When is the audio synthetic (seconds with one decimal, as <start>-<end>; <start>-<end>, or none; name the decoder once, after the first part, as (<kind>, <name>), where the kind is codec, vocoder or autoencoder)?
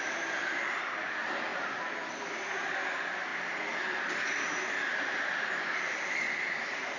none